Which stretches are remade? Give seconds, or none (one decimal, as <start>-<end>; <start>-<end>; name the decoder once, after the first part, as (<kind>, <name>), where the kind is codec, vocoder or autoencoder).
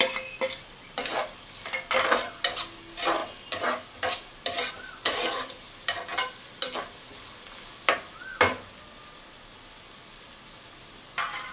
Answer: none